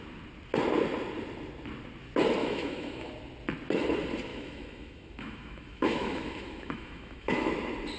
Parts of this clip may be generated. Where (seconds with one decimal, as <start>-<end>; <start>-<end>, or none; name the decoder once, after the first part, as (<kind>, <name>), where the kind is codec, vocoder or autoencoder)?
2.4-3.1 (autoencoder, DAC-VAE); 4.3-7.5